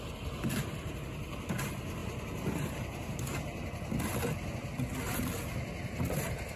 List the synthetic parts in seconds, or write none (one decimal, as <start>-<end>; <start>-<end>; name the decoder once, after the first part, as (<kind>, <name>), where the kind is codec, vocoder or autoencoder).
none